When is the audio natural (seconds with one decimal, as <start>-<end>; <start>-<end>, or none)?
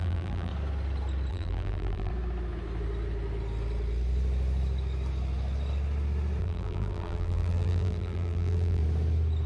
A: 0.5-1.3; 2.1-6.4; 8.8-9.5